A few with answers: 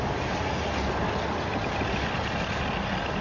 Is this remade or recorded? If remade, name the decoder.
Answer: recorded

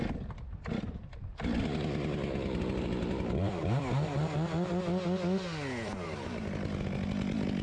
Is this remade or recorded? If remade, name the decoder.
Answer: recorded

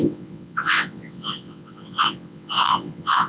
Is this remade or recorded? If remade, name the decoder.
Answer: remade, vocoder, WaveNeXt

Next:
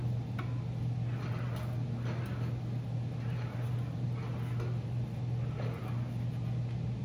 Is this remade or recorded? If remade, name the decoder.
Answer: recorded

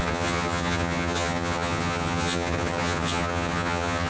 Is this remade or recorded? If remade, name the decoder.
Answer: remade, vocoder, HiFi-GAN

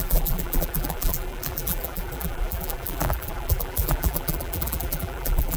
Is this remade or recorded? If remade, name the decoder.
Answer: remade, vocoder, BigVGAN v2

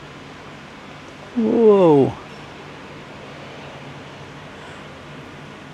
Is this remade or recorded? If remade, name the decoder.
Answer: recorded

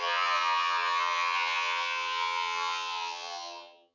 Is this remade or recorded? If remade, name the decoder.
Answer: remade, vocoder, HiFi-GAN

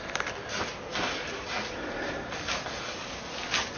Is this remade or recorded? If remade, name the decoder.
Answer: recorded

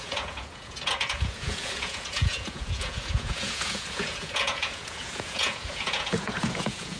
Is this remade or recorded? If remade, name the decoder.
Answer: remade, vocoder, Vocos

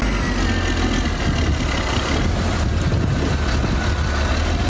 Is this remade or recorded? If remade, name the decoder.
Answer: recorded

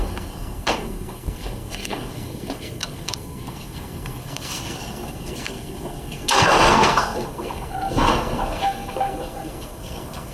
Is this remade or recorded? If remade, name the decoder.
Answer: remade, codec, SNAC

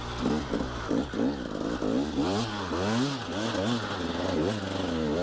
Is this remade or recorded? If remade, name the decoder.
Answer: recorded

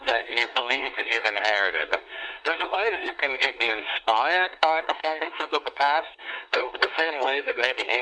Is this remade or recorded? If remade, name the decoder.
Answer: remade, codec, SNAC